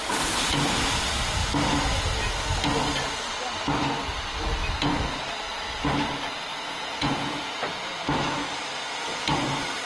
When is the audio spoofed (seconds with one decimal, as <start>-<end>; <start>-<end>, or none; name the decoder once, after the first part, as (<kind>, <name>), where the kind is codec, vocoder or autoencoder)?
6.5-8.0 (vocoder, Vocos)